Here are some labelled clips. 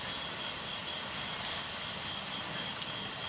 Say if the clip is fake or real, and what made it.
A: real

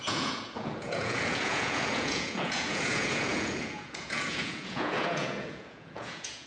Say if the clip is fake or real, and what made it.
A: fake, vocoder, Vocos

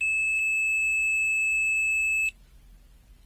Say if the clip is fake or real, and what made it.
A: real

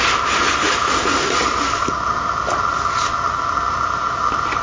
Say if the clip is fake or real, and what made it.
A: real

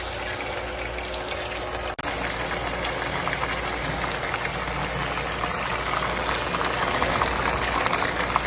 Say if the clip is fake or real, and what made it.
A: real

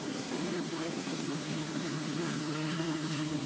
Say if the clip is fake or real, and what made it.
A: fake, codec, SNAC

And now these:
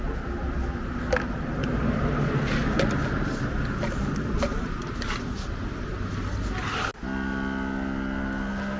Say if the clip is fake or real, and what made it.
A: real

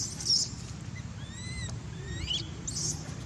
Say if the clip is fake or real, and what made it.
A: real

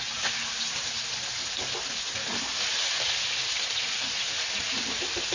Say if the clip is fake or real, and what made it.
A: real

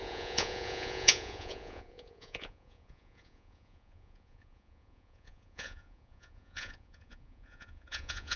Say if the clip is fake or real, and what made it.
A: fake, vocoder, Vocos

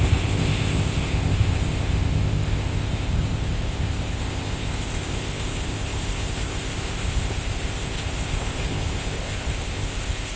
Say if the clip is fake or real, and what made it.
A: fake, codec, ZipCodec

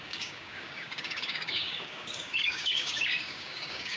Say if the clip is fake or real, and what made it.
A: fake, codec, DAC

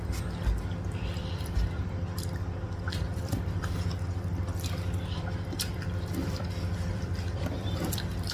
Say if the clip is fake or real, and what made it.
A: fake, vocoder, BigVGAN v2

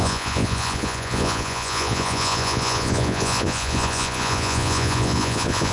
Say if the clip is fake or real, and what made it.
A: fake, vocoder, Vocos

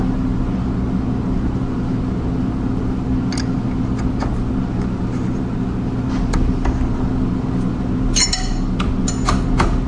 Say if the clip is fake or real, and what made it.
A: real